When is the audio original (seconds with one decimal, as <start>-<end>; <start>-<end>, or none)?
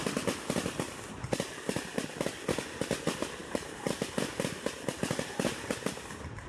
0.0-6.5